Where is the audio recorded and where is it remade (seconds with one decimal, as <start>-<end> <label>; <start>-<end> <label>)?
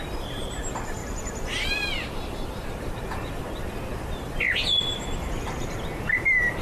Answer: 0.0-1.0 recorded; 1.0-2.8 remade; 2.8-6.6 recorded